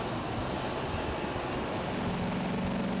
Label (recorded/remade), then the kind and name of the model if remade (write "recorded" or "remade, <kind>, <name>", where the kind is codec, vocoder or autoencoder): recorded